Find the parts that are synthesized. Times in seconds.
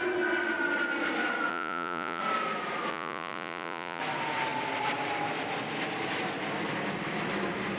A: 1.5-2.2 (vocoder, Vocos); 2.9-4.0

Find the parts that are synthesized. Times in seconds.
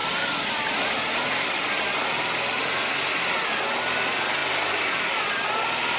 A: none